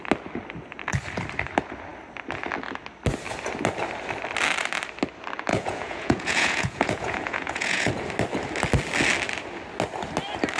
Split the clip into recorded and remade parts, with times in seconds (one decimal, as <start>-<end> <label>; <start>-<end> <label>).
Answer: 0.0-5.5 recorded; 5.5-7.9 remade; 7.9-10.6 recorded